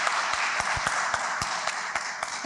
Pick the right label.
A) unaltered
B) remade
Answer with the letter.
A